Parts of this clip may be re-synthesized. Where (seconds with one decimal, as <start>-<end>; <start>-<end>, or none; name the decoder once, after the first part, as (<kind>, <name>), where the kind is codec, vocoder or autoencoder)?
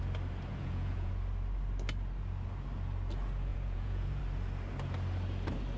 0.5-1.1 (vocoder, Vocos); 3.5-4.2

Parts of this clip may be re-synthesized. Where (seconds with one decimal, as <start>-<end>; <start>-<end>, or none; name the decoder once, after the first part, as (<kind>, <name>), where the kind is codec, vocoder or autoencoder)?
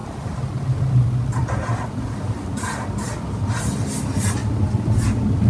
0.0-3.3 (vocoder, BigVGAN v2); 4.4-5.5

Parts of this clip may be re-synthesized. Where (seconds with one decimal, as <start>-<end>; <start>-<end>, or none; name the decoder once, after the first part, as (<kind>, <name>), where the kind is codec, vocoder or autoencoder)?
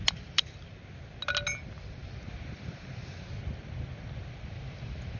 none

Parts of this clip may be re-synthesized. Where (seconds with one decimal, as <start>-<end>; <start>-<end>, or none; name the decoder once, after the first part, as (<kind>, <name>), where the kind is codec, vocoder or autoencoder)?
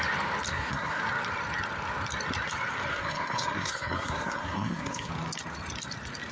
0.5-1.0 (codec, SNAC); 2.9-5.1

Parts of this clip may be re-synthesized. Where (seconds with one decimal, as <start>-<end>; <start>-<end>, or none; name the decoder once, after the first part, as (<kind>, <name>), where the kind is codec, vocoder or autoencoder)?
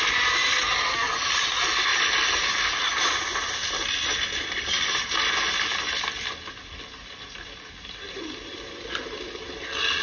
none